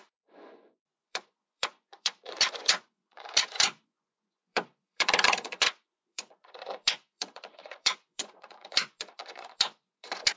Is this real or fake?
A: fake